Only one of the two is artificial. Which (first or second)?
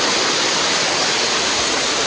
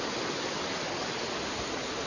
first